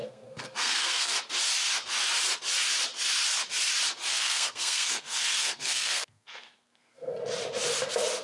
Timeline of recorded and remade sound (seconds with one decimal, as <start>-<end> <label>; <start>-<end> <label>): 0.0-1.1 remade; 1.1-4.1 recorded; 4.1-7.1 remade; 7.1-8.2 recorded

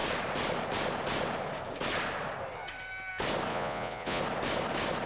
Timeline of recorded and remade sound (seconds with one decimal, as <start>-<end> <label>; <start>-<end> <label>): 0.0-3.5 recorded; 3.5-4.2 remade; 4.2-5.1 recorded

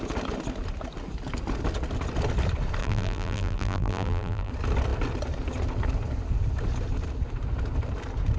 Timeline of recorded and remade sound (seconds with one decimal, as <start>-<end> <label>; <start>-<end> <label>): 0.0-2.8 recorded; 2.8-4.5 remade; 4.5-8.4 recorded